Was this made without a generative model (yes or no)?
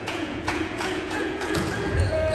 no